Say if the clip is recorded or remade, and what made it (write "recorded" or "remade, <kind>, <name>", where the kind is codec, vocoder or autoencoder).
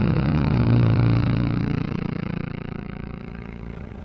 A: remade, vocoder, WaveNeXt